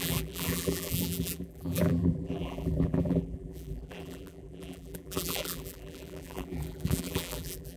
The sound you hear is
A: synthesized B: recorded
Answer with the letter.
A